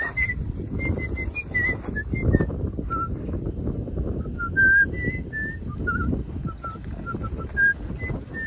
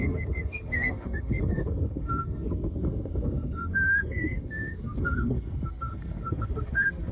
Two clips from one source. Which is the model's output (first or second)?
second